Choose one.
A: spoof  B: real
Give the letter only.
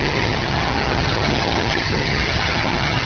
A